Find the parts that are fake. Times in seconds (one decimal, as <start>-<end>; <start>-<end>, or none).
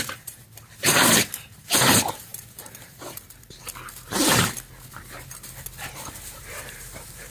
0.0-2.3; 5.9-7.3